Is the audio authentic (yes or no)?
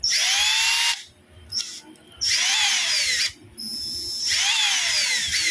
yes